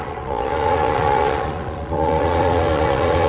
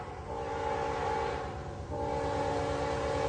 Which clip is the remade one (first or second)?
first